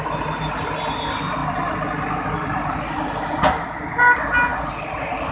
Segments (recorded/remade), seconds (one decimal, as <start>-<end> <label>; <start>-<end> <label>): 0.0-5.3 recorded